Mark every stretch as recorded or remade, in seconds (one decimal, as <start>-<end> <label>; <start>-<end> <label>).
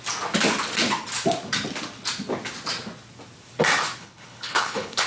0.0-4.0 recorded; 4.0-5.1 remade